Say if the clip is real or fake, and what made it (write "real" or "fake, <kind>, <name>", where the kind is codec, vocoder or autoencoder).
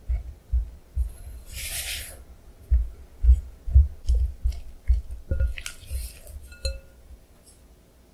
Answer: real